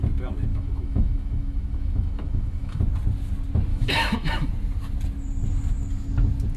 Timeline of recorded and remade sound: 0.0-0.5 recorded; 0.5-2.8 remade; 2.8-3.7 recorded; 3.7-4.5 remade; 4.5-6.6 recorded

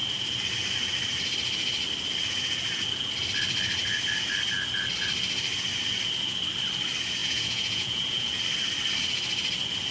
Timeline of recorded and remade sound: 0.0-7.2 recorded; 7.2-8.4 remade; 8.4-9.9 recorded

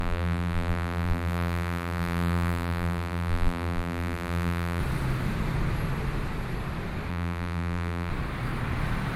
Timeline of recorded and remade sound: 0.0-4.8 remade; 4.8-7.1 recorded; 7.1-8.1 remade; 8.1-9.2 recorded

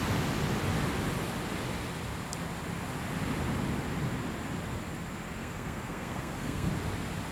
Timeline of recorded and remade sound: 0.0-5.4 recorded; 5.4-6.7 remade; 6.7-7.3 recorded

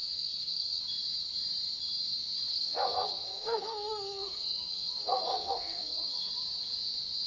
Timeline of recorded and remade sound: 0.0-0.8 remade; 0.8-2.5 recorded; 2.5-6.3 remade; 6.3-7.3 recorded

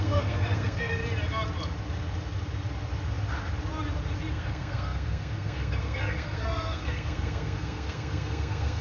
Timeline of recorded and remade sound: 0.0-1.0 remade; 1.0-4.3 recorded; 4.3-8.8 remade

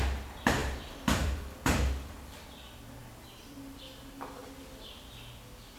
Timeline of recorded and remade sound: 0.0-0.6 recorded; 0.6-1.6 remade; 1.6-3.0 recorded; 3.0-3.8 remade; 3.8-5.8 recorded